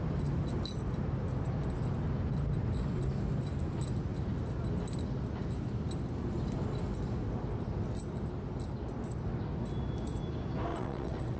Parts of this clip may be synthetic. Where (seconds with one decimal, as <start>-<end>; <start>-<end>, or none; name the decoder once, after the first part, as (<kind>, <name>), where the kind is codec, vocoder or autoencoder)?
10.7-11.4 (vocoder, WaveNeXt)